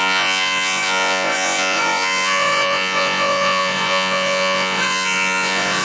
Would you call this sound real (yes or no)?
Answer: no